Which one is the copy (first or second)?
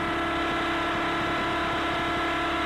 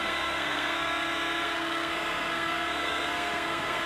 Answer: second